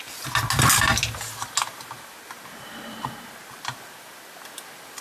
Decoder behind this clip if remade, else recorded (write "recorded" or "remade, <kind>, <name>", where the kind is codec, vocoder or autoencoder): recorded